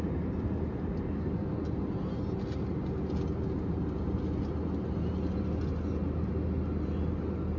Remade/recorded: recorded